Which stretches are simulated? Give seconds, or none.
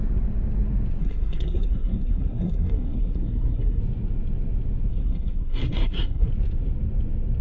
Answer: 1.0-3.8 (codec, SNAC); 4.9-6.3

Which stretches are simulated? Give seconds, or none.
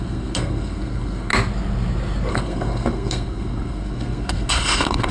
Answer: 0.0-1.3 (codec, SNAC); 2.3-5.1